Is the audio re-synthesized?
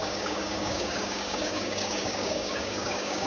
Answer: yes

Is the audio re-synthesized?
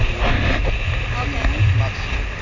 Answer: no